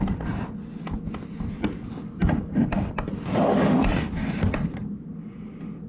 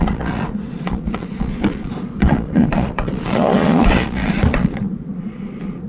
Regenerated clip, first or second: second